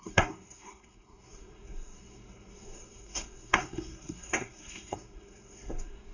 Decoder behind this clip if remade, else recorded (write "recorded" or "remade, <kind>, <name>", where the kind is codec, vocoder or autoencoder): remade, codec, SNAC